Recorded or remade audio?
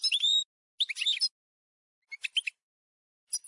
recorded